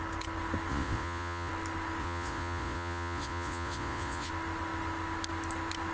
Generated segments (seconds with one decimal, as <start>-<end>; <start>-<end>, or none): 0.7-1.5; 2.0-4.3